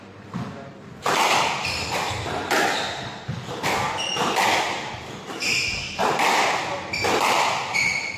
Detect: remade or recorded recorded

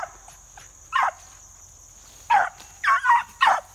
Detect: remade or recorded recorded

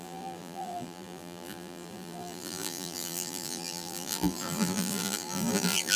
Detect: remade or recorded remade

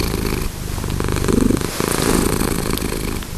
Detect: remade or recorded recorded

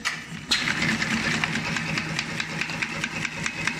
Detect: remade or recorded recorded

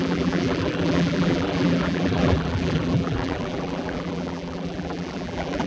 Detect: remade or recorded remade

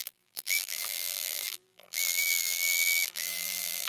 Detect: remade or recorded remade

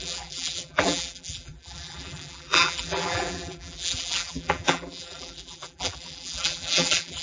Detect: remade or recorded remade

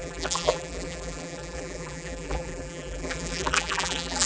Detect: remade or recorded remade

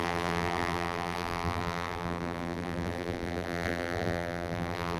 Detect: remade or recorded remade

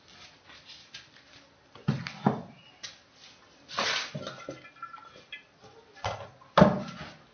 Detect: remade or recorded recorded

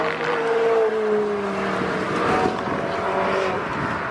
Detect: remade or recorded recorded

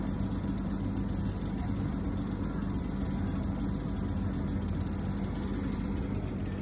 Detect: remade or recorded recorded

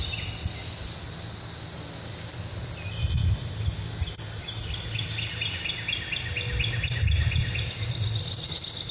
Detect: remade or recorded recorded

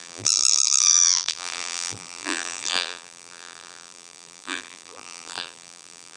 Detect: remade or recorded remade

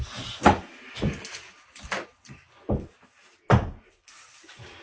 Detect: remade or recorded remade